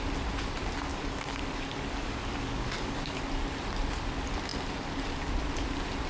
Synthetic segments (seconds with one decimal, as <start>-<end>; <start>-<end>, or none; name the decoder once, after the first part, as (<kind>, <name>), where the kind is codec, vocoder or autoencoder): 0.9-3.2 (codec, DAC)